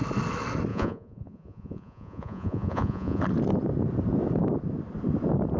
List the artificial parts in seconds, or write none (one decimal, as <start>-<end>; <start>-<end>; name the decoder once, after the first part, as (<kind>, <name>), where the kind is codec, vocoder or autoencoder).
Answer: 0.7-3.2 (vocoder, Vocos)

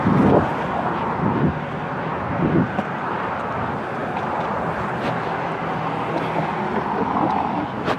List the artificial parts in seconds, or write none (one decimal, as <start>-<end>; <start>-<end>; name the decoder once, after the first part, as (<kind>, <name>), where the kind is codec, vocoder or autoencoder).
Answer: none

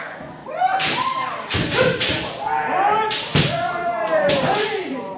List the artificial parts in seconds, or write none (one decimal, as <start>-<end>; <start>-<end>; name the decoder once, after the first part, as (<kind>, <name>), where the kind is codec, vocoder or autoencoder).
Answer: 0.0-0.4 (vocoder, Vocos); 3.5-5.2

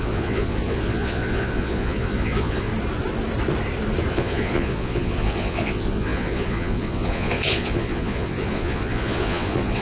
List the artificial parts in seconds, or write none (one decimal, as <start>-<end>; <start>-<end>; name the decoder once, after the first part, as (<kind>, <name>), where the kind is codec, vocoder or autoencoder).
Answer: 0.0-2.7 (vocoder, Vocos); 4.1-9.8

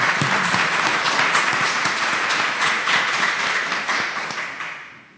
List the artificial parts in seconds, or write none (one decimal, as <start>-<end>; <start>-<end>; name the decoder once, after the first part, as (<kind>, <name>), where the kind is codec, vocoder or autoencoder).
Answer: 0.9-3.1 (vocoder, Vocos)

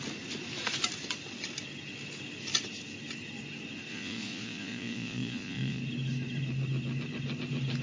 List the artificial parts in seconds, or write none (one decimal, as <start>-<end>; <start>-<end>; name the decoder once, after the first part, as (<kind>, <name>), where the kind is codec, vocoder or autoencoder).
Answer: 3.9-5.8 (vocoder, Vocos)

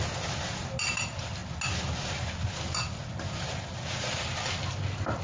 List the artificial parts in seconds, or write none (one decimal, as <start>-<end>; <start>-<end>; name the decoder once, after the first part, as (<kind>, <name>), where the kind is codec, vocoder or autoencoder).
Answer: none